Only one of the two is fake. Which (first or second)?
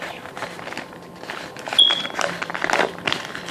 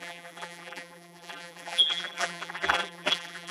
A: second